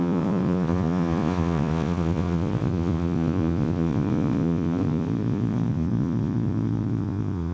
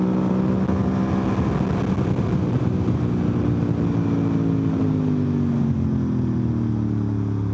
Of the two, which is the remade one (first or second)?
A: first